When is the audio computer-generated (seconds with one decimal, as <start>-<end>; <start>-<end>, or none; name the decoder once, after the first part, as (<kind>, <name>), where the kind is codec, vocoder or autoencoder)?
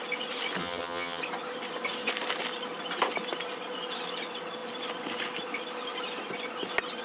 0.6-1.2 (vocoder, HiFi-GAN)